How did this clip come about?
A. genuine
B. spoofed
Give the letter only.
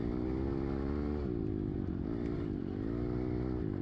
A